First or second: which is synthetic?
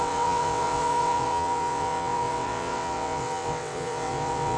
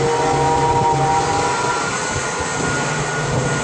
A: first